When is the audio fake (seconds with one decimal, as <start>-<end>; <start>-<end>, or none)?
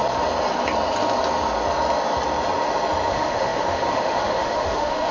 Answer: 3.1-5.1